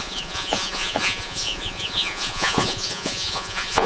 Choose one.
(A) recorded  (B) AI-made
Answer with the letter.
B